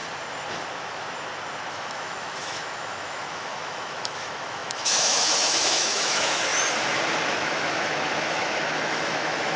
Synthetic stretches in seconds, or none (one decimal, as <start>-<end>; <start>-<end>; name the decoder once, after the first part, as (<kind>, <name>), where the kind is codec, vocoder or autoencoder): 1.7-6.5 (autoencoder, DAC-VAE); 7.3-9.6